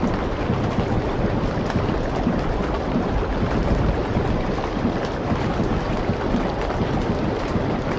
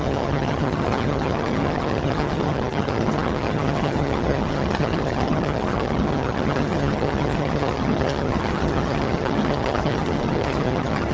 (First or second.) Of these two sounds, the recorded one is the first